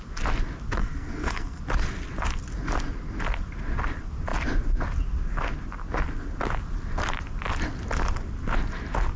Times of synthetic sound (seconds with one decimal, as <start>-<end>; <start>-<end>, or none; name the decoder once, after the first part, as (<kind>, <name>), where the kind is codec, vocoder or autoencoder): 0.8-1.6 (codec, SNAC)